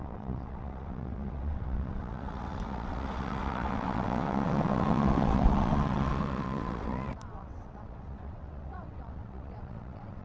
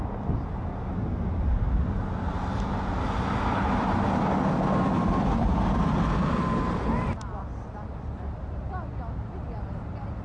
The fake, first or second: first